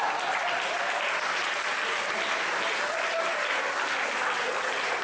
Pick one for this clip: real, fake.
real